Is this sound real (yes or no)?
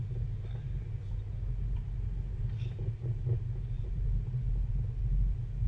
yes